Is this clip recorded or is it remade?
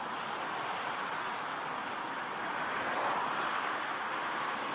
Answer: recorded